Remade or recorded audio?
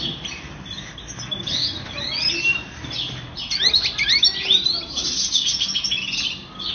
recorded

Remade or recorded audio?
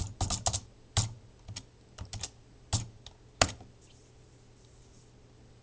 recorded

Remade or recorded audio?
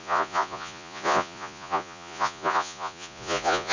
remade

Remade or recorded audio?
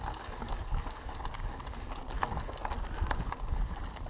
recorded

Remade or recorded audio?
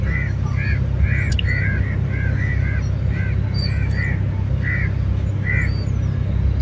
recorded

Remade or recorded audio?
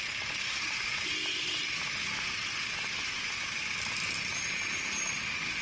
recorded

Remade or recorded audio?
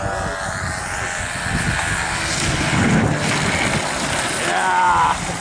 recorded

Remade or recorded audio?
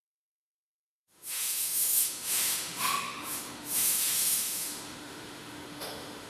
remade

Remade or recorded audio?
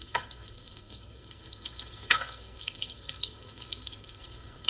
remade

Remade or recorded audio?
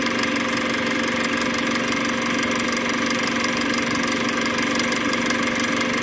recorded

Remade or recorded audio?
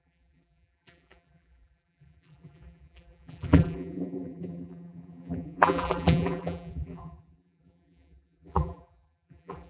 remade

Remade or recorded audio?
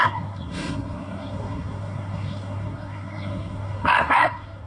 remade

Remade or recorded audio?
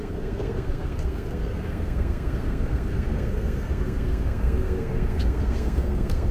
remade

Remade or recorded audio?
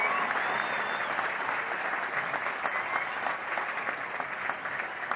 recorded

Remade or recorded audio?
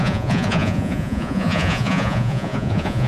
remade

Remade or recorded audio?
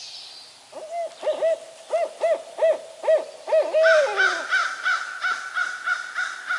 recorded